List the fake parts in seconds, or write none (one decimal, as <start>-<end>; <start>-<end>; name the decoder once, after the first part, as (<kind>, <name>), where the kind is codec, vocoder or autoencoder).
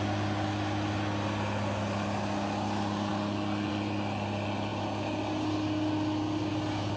none